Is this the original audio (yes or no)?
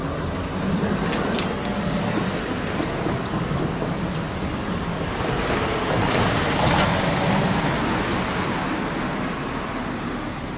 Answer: yes